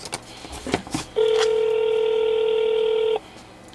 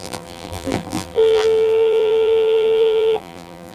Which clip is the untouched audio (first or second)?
first